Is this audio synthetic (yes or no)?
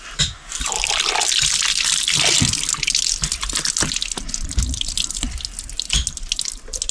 no